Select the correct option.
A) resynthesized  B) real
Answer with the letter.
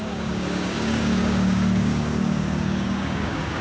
A